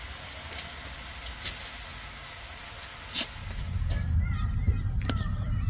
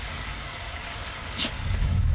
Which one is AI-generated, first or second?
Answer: second